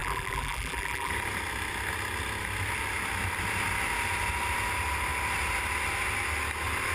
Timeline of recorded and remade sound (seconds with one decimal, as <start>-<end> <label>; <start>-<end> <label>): 0.0-1.1 remade; 1.1-6.9 recorded

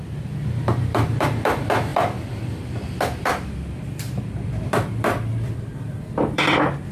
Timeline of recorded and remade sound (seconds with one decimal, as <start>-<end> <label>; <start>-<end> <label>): 0.0-6.9 remade

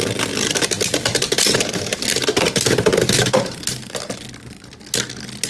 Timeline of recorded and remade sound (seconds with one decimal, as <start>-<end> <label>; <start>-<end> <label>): 0.0-1.1 recorded; 1.1-4.1 remade; 4.1-5.5 recorded

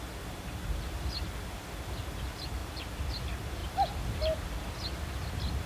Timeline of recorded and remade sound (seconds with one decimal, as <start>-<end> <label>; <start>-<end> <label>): 0.0-2.6 recorded; 2.6-3.1 remade; 3.1-3.6 recorded; 3.6-5.7 remade

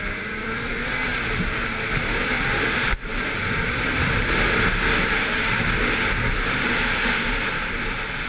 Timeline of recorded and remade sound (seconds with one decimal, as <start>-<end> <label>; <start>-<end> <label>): 0.0-1.1 remade; 1.1-2.7 recorded; 2.7-8.3 remade